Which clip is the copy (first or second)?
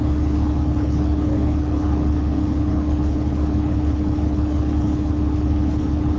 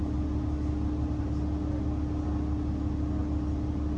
first